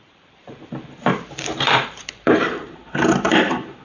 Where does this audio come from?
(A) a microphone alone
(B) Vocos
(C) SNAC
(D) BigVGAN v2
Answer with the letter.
D